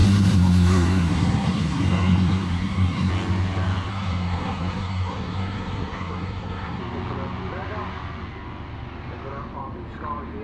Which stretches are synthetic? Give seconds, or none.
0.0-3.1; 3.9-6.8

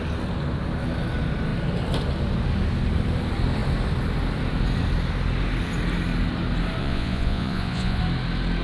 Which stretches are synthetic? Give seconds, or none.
6.8-8.0

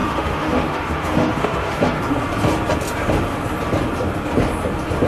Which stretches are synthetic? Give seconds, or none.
0.0-2.0

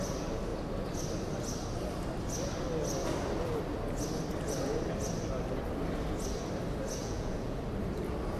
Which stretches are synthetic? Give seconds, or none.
7.0-7.6

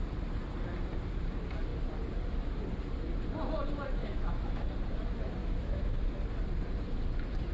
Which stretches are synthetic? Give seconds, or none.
4.0-4.7; 5.4-6.0

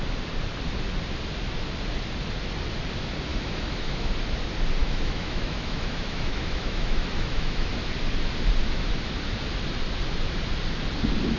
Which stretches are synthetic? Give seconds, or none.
3.3-4.1; 4.8-7.7; 8.6-9.1

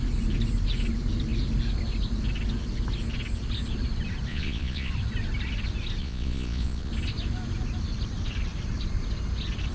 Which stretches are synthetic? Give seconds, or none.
4.3-4.9; 6.0-6.9